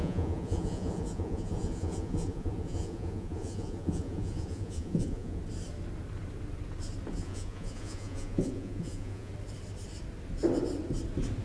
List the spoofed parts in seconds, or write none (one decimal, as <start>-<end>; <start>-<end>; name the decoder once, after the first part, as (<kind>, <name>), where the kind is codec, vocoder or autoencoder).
0.0-5.4 (vocoder, Vocos); 7.1-9.3